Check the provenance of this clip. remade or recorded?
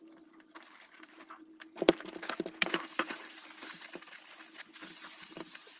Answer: remade